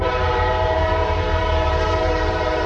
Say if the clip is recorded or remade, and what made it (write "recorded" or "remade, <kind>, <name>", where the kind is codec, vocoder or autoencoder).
remade, vocoder, BigVGAN v2